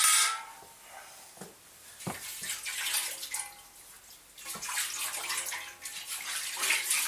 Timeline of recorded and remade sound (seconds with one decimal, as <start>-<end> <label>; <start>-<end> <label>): 0.0-7.1 recorded